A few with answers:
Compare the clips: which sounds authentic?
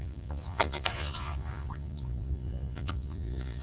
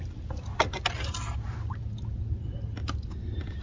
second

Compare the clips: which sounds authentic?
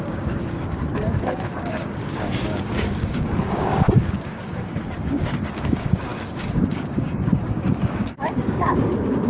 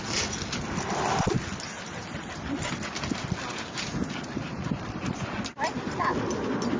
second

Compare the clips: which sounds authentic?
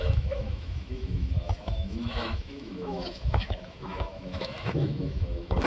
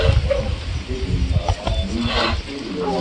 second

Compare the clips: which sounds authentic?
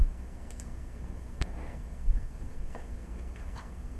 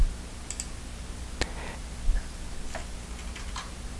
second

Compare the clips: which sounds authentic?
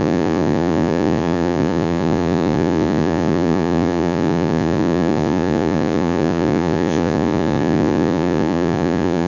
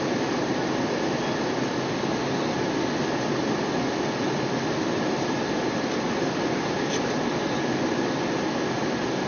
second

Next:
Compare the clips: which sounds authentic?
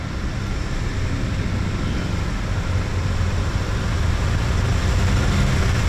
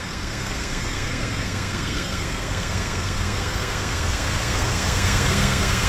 first